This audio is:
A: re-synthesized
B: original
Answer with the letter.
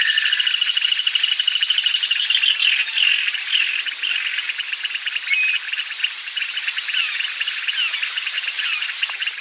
A